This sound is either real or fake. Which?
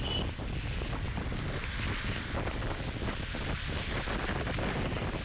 real